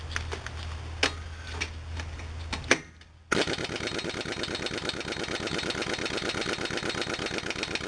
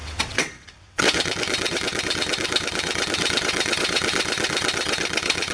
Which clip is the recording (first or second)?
first